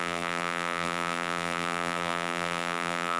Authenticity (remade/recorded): remade